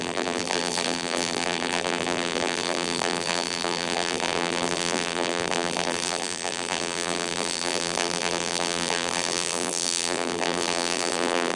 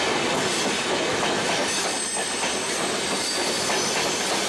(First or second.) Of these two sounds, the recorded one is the second